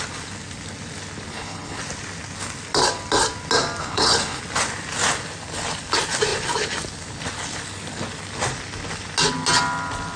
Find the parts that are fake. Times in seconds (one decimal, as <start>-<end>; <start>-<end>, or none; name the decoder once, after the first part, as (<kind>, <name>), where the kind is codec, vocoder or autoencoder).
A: 1.3-1.8 (codec, HILCodec); 3.8-4.4